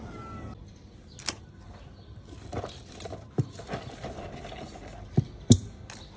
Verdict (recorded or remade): recorded